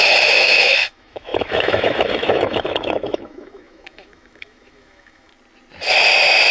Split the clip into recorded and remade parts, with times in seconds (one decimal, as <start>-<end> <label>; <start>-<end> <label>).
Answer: 0.0-5.3 remade; 5.3-6.5 recorded